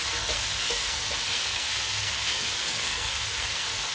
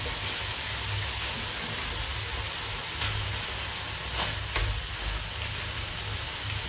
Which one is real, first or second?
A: second